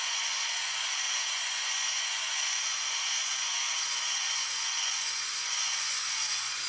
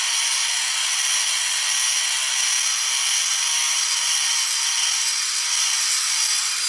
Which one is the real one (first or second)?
second